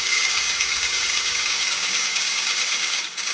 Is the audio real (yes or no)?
no